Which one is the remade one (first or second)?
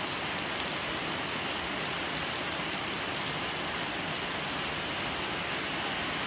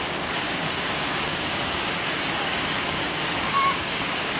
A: second